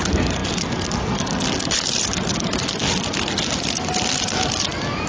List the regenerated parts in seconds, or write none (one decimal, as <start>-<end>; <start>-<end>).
none